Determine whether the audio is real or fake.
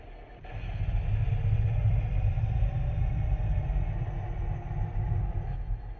real